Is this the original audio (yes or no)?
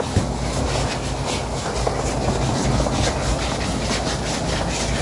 yes